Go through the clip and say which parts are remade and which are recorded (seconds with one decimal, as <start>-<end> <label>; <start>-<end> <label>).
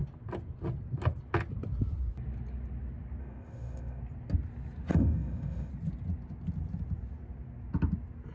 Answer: 0.0-3.2 recorded; 3.2-4.0 remade; 4.0-4.9 recorded; 4.9-5.7 remade; 5.7-8.3 recorded